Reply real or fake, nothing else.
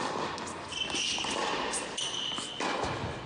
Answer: real